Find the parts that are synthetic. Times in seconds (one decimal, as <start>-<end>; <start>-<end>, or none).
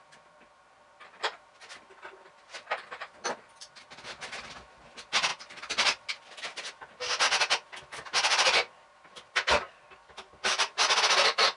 none